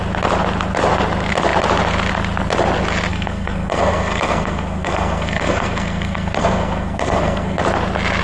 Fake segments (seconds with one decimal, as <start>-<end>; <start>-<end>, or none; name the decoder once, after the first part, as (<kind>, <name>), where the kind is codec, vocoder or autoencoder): 3.1-7.6 (codec, SNAC)